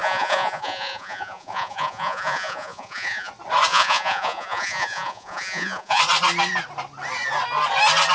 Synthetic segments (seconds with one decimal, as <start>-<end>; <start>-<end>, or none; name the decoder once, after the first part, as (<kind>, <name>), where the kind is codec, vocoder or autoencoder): 0.0-3.3 (vocoder, Vocos); 3.7-6.0